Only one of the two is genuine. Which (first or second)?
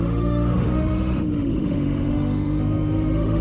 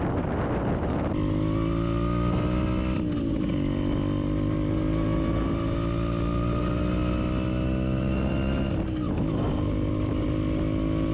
second